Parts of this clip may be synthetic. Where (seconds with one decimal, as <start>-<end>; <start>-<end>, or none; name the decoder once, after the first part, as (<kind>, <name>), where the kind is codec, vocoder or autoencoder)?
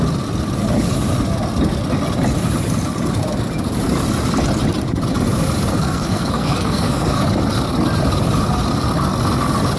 5.7-7.2 (codec, SNAC)